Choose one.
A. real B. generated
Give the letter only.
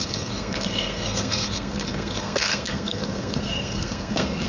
B